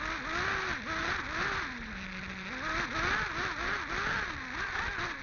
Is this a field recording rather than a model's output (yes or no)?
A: yes